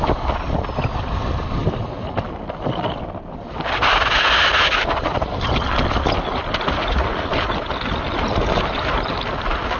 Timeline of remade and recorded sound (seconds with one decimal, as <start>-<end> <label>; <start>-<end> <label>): 0.0-9.8 recorded